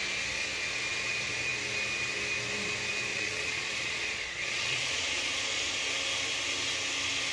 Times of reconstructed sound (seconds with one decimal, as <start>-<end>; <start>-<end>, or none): 3.1-5.8